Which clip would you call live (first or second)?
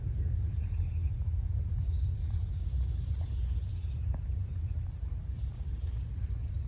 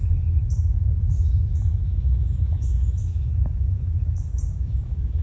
first